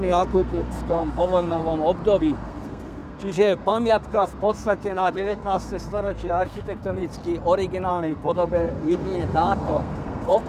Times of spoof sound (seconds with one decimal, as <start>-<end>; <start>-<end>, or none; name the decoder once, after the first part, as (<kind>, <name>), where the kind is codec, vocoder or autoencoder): 0.0-1.6 (codec, SNAC); 2.2-7.0; 7.9-10.5

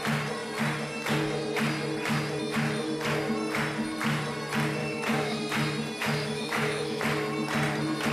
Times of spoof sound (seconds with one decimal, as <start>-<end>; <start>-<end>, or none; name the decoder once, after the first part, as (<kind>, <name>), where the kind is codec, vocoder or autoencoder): 4.8-5.4 (autoencoder, DAC-VAE); 6.0-7.0

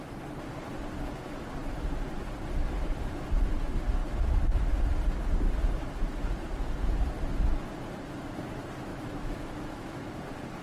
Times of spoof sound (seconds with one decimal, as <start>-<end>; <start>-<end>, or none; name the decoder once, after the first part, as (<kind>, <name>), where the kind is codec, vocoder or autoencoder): 4.0-4.7 (autoencoder, DAC-VAE); 8.9-10.1

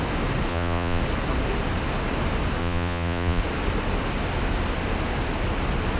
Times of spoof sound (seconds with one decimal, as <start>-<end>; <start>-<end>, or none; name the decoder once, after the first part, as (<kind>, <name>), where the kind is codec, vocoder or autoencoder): 0.5-1.0 (vocoder, Vocos); 2.6-3.4